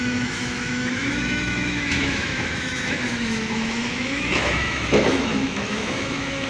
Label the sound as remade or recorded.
remade